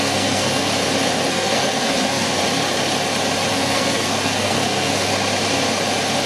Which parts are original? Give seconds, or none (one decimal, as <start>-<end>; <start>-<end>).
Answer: 0.7-1.3; 2.4-3.5; 5.1-6.3